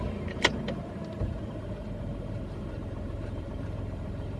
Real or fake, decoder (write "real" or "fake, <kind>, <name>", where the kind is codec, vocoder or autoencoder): fake, vocoder, BigVGAN v2